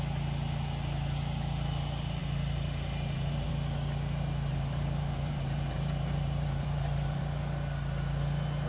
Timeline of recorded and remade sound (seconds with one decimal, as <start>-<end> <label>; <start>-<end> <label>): 0.0-2.2 recorded; 2.2-3.5 remade; 3.5-4.5 recorded; 4.5-7.2 remade; 7.2-8.7 recorded